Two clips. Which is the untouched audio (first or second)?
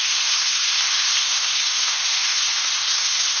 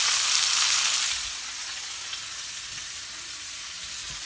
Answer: second